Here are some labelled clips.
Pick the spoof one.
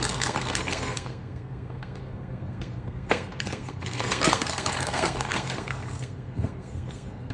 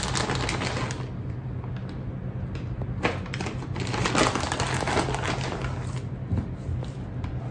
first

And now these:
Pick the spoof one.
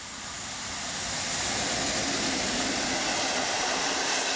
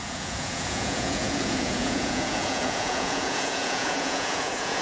second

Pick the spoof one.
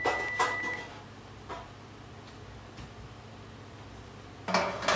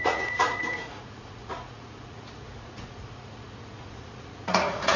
second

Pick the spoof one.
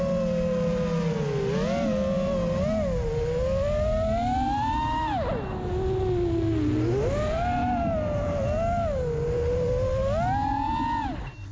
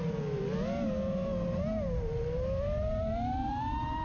second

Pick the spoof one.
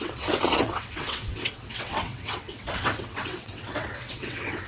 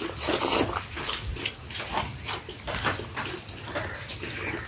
first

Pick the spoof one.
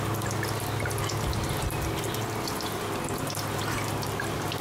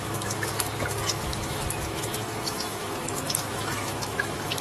second